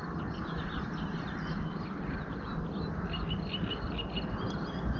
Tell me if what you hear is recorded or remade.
recorded